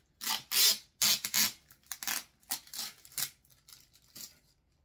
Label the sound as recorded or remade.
recorded